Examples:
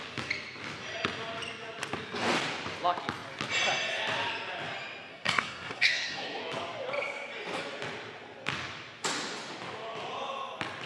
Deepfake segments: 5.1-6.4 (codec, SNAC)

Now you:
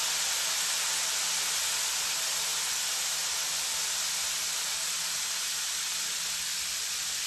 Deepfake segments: none

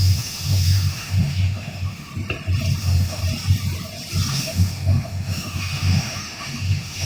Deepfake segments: 0.0-2.1 (autoencoder, DAC-VAE); 2.8-3.2; 4.3-7.1

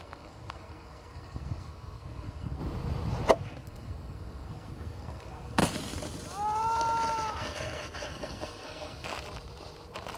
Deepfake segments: 0.0-2.6 (codec, SNAC); 3.3-5.6; 7.3-9.1

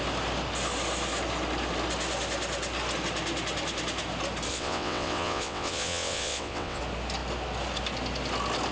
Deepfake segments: 4.5-6.8 (vocoder, WaveNeXt)

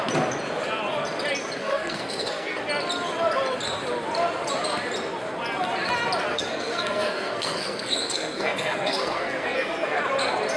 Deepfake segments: 1.6-2.6 (codec, SNAC); 6.3-10.0

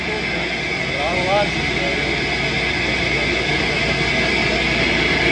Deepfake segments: none